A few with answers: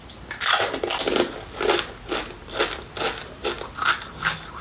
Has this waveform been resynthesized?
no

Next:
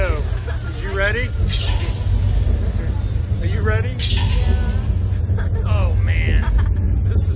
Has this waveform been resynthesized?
no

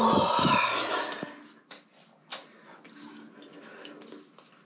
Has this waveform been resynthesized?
no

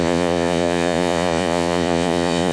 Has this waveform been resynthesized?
yes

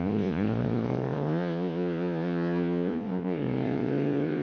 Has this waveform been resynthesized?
yes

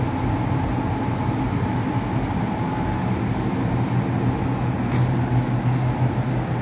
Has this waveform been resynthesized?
no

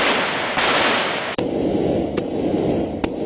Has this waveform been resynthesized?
no